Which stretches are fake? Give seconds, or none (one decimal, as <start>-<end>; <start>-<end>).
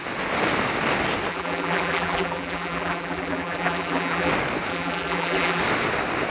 1.3-4.3; 4.7-5.6